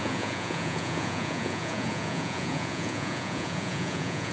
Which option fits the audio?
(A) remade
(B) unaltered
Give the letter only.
A